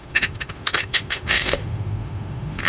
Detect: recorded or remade remade